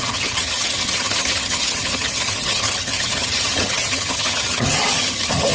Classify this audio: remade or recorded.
remade